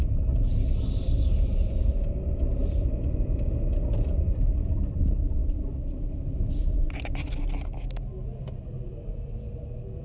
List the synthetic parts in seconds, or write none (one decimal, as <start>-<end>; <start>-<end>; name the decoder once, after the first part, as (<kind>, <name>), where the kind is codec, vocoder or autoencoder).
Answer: none